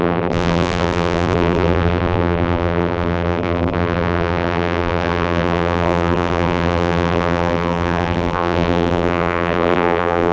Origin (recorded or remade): remade